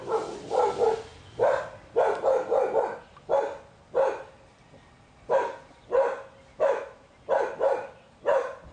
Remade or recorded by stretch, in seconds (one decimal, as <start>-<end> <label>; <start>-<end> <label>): 0.0-6.5 recorded; 6.5-7.1 remade; 7.1-8.7 recorded

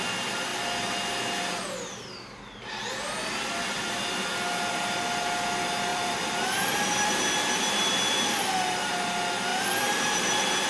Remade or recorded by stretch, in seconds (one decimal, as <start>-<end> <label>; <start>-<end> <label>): 0.0-5.9 recorded; 5.9-8.4 remade; 8.4-9.5 recorded; 9.5-10.7 remade

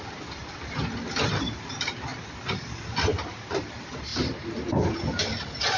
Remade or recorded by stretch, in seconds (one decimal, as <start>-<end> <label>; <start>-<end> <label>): 0.0-2.1 remade; 2.1-3.3 recorded; 3.3-4.1 remade; 4.1-4.9 recorded; 4.9-5.8 remade

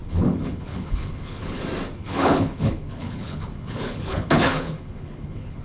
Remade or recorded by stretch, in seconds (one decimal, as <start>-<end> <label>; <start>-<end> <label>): 0.0-1.6 remade; 1.6-2.0 recorded; 2.0-5.6 remade

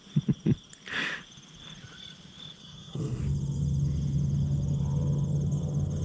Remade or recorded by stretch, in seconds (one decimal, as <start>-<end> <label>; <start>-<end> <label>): 0.0-2.6 recorded; 2.6-3.2 remade; 3.2-6.0 recorded

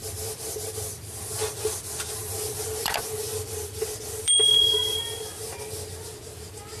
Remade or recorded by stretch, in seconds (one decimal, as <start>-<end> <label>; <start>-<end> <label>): 0.0-1.0 remade; 1.0-2.2 recorded; 2.2-5.0 remade; 5.0-6.8 recorded

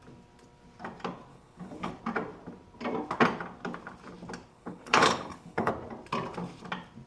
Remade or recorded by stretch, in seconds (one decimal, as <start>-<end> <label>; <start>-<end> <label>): 0.0-1.3 recorded; 1.3-1.9 remade; 1.9-4.5 recorded; 4.5-5.7 remade; 5.7-7.1 recorded

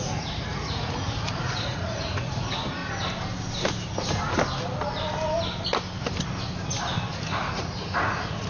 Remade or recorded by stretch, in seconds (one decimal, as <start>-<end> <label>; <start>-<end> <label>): 0.0-2.8 remade; 2.8-7.1 recorded; 7.1-8.5 remade